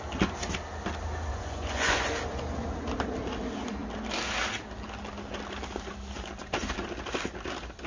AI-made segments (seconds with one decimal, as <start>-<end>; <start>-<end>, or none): 1.3-2.1